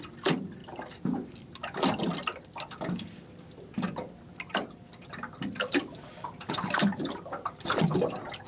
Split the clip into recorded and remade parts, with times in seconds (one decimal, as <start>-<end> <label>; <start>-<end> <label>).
0.0-8.5 recorded